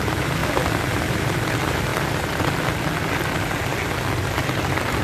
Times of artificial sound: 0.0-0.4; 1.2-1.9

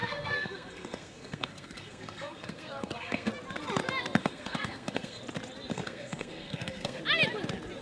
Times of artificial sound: 0.0-3.3; 4.2-5.2; 5.7-7.0